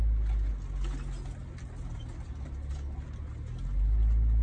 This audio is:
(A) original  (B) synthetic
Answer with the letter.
A